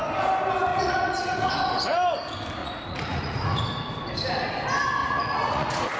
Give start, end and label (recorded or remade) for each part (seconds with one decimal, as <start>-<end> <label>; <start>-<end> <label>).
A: 0.0-0.7 recorded; 0.7-1.5 remade; 1.5-2.6 recorded; 2.6-3.6 remade; 3.6-5.0 recorded; 5.0-6.0 remade